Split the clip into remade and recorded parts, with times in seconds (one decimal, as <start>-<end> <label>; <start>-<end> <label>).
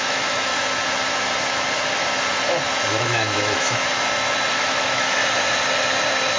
0.0-0.5 remade; 0.5-2.9 recorded; 2.9-3.8 remade; 3.8-4.5 recorded; 4.5-5.2 remade; 5.2-6.4 recorded